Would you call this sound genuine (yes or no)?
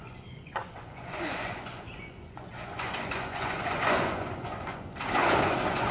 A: no